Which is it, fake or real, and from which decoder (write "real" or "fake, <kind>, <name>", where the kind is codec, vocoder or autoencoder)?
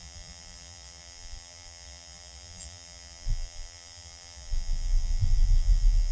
fake, vocoder, BigVGAN v2